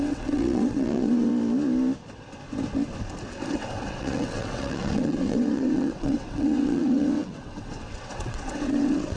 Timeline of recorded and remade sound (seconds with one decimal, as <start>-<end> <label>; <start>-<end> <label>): 0.0-1.3 remade; 1.3-3.5 recorded; 3.5-9.2 remade